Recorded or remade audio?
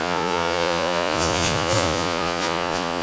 remade